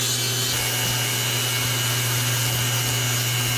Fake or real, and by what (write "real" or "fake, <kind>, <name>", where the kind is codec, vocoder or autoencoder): real